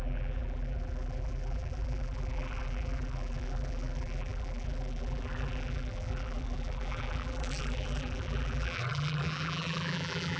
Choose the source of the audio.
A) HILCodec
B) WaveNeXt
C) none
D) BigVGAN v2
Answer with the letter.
D